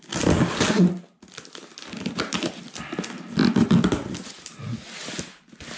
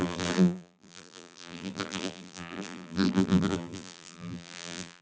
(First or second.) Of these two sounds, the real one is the first